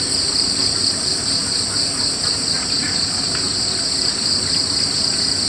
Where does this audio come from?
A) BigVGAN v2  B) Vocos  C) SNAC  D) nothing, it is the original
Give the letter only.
D